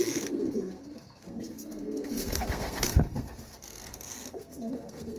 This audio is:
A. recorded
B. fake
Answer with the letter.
B